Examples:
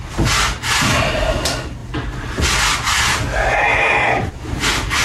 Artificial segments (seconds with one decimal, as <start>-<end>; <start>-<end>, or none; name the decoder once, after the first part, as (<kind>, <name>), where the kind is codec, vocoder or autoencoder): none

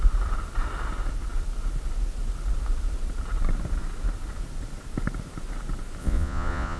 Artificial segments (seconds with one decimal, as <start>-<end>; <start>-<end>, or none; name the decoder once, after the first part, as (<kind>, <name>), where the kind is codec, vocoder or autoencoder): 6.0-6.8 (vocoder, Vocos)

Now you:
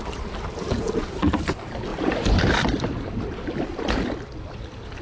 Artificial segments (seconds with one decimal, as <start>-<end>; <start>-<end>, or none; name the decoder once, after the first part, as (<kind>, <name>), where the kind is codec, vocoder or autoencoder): 1.9-5.0 (vocoder, BigVGAN v2)

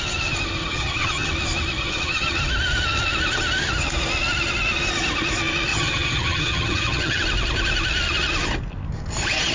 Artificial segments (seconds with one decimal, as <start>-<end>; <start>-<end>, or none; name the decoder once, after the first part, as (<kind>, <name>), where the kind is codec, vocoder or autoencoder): 0.6-1.3 (vocoder, HiFi-GAN); 1.8-2.4; 5.7-7.2

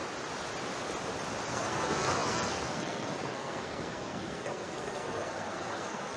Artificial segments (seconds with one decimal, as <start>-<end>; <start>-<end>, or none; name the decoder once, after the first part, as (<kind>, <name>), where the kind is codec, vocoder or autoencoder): 1.5-6.2 (codec, SNAC)